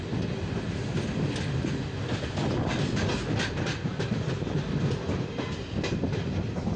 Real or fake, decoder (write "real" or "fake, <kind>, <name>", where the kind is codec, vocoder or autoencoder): real